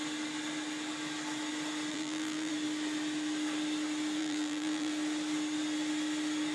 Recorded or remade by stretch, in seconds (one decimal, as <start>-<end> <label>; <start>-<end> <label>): 0.0-1.9 recorded; 1.9-2.5 remade; 2.5-4.2 recorded; 4.2-4.9 remade; 4.9-6.5 recorded